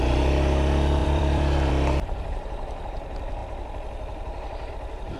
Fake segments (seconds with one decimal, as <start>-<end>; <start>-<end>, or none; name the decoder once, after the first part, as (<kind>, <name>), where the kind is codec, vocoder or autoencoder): 1.0-1.7 (vocoder, BigVGAN v2)

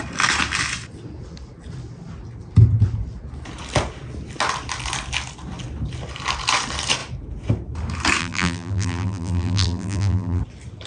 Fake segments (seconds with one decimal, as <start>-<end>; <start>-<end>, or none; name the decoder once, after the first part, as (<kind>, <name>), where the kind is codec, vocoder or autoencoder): 8.2-10.4 (vocoder, BigVGAN v2)

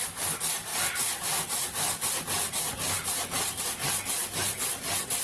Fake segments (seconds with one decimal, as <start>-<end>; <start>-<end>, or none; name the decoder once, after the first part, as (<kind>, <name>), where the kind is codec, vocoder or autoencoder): 0.7-3.6 (vocoder, BigVGAN v2); 4.2-4.7

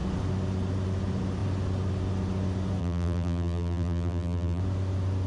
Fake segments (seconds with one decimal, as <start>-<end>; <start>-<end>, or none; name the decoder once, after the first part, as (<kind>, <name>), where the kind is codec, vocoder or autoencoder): 2.8-4.6 (vocoder, BigVGAN v2)

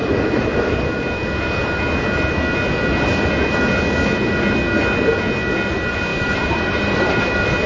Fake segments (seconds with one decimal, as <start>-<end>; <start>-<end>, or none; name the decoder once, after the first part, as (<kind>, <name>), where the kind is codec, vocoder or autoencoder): 0.0-0.8 (vocoder, BigVGAN v2); 6.1-7.2

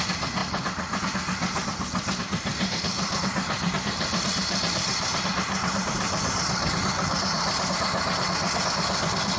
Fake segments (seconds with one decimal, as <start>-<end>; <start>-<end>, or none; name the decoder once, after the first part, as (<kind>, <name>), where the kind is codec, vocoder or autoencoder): 2.5-7.6 (vocoder, BigVGAN v2)